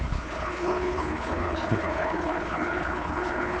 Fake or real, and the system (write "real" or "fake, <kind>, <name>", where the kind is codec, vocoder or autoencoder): fake, codec, HILCodec